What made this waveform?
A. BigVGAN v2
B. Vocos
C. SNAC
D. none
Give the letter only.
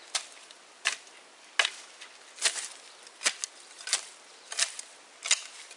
D